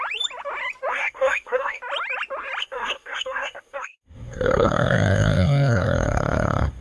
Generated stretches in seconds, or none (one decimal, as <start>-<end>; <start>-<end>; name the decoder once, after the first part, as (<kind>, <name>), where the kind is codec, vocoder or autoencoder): 0.9-1.8 (codec, SNAC); 2.6-6.8